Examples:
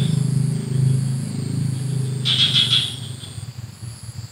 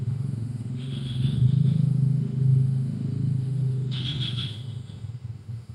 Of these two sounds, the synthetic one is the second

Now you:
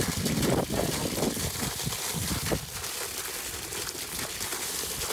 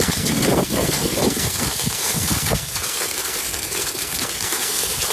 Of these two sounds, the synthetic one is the second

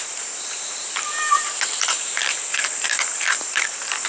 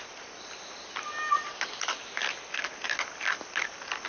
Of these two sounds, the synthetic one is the first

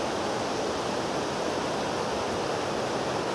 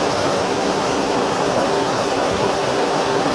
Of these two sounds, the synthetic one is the second